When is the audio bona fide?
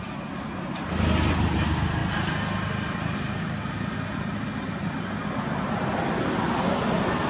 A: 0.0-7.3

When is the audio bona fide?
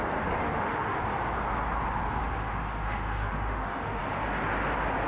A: 0.0-0.4; 1.0-2.2; 4.0-5.1